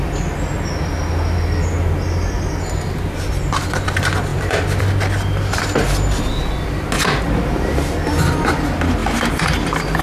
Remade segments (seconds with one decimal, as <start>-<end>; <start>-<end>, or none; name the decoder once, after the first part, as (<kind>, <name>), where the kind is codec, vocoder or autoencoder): 4.3-4.8 (vocoder, BigVGAN v2)